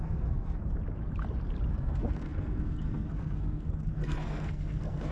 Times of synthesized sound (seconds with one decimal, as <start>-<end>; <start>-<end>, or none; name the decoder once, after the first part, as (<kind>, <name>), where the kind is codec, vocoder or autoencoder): 0.0-0.6 (codec, SNAC); 1.7-5.1